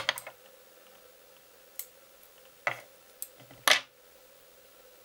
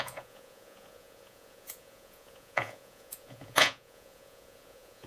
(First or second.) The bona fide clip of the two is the first